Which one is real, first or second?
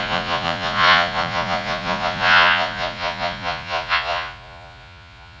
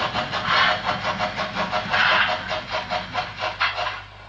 second